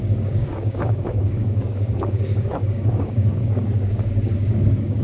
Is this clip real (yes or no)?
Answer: no